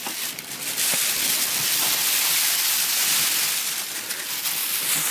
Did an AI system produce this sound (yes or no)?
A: no